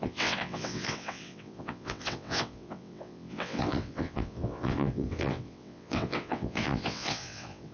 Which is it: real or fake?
fake